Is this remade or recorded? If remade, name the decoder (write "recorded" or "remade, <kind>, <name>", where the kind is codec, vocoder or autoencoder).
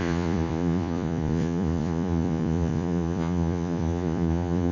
remade, vocoder, Vocos